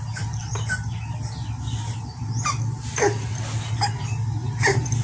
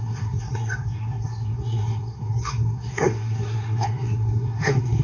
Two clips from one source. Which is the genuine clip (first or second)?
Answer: first